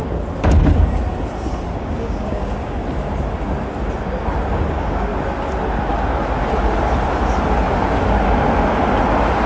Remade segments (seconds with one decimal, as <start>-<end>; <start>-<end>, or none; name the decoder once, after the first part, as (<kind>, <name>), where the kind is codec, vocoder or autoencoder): 1.8-2.8 (codec, DAC); 4.5-5.1

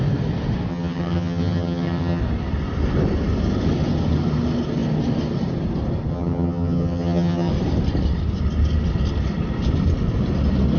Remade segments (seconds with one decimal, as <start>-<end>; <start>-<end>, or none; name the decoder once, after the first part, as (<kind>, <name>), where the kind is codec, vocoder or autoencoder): 0.7-2.2 (vocoder, HiFi-GAN); 6.1-7.5

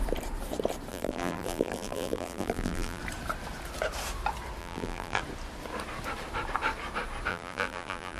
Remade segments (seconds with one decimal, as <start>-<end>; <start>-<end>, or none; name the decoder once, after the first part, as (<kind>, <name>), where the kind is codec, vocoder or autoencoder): 0.9-3.0 (vocoder, BigVGAN v2); 4.6-5.2; 7.3-8.2

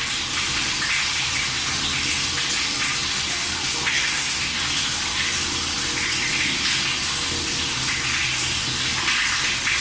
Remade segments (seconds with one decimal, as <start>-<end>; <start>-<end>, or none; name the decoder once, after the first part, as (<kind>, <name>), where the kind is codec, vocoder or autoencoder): 3.9-4.6 (codec, SNAC)

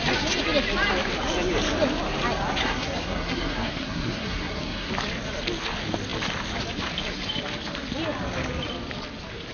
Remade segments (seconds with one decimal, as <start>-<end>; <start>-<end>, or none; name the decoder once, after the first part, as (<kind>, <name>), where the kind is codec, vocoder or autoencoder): 2.6-4.9 (codec, SNAC)

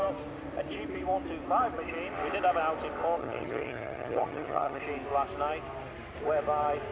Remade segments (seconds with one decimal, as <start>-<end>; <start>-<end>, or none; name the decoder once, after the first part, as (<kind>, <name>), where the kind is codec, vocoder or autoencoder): 3.2-4.8 (vocoder, HiFi-GAN)

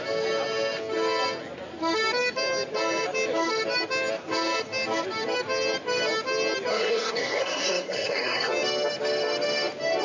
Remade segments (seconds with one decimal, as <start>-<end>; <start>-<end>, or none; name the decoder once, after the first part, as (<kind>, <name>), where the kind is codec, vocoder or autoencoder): 6.7-8.5 (codec, SNAC)

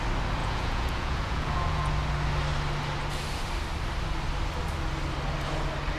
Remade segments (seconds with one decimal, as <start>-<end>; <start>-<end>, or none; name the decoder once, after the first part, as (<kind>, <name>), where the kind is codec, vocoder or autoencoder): 0.4-1.9 (vocoder, Vocos)